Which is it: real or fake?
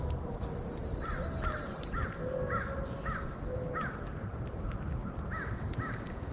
real